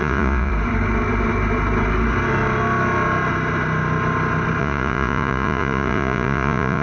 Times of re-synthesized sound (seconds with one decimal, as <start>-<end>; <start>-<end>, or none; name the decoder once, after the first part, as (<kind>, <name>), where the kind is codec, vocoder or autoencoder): 0.0-0.5 (vocoder, Vocos); 4.6-6.8